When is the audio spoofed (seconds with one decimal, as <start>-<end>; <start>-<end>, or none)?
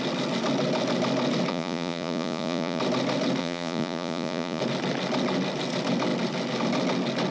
1.5-2.8; 3.4-4.6